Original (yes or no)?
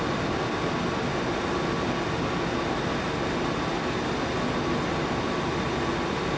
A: yes